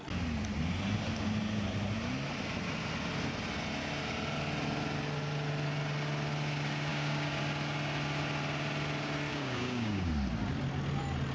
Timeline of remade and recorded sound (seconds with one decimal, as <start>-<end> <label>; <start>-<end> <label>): 0.0-6.9 recorded; 6.9-7.4 remade; 7.4-9.3 recorded; 9.3-10.1 remade; 10.1-11.3 recorded